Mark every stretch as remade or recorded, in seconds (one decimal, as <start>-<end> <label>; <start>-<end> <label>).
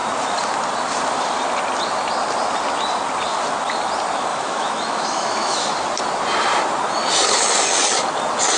0.0-4.3 recorded; 4.3-5.7 remade; 5.7-8.6 recorded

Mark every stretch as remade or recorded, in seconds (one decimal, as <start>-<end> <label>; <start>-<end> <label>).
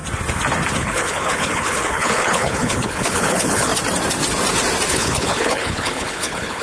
0.0-0.8 recorded; 0.8-3.7 remade; 3.7-4.9 recorded; 4.9-6.6 remade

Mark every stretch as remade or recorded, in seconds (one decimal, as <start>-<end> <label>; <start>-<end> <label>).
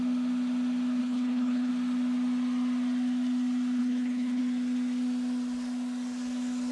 0.0-1.0 recorded; 1.0-1.7 remade; 1.7-3.8 recorded; 3.8-4.4 remade; 4.4-6.7 recorded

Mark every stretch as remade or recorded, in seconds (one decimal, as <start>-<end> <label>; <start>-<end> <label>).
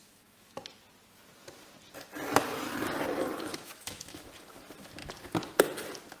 0.0-0.6 remade; 0.6-3.5 recorded; 3.5-4.3 remade; 4.3-6.2 recorded